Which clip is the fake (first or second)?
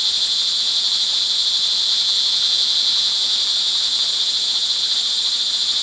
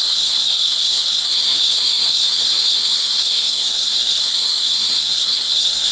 second